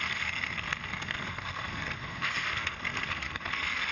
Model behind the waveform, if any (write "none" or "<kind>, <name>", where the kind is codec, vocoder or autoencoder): codec, SNAC